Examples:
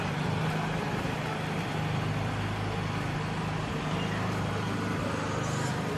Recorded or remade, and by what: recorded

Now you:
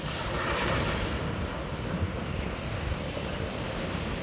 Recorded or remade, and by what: recorded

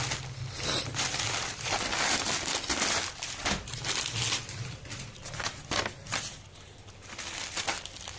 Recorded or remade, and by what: recorded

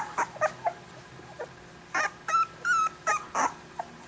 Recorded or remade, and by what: recorded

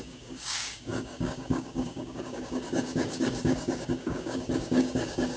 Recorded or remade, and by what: remade, codec, DAC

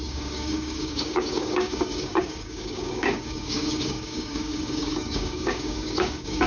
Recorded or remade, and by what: remade, codec, DAC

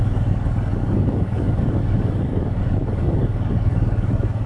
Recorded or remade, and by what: remade, codec, DAC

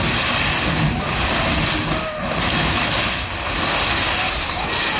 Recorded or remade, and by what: recorded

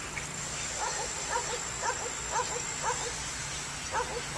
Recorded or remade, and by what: recorded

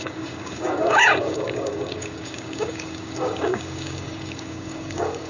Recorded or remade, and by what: remade, codec, DAC